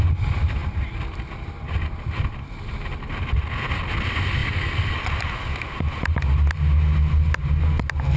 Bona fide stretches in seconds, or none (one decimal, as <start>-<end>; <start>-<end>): 0.0-8.2